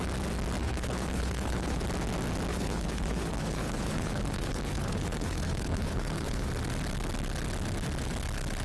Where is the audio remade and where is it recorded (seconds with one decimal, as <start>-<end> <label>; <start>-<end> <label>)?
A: 0.0-0.6 recorded; 0.6-1.8 remade; 1.8-2.5 recorded; 2.5-6.5 remade; 6.5-8.6 recorded